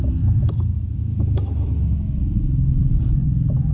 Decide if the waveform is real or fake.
real